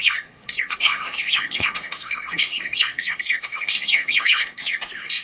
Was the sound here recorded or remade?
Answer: remade